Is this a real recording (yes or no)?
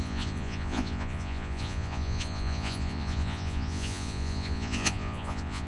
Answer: no